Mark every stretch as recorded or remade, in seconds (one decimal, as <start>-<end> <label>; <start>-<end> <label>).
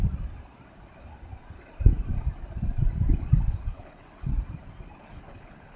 0.0-3.5 recorded; 3.5-4.3 remade; 4.3-5.0 recorded; 5.0-5.8 remade